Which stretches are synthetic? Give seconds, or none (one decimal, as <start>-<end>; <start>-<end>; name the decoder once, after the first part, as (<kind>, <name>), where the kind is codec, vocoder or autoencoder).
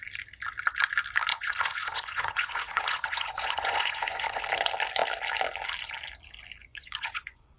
1.3-4.4 (vocoder, Vocos); 6.7-7.6